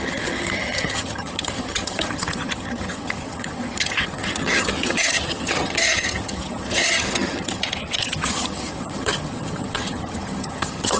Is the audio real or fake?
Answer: fake